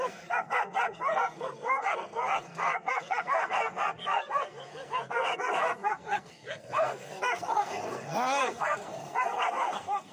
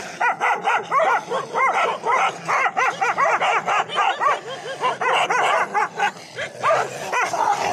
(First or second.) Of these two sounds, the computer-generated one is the first